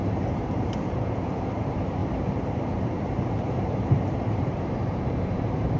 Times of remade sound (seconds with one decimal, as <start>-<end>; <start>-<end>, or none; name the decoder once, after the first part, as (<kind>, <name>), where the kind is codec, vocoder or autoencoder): 0.0-5.8 (vocoder, BigVGAN v2)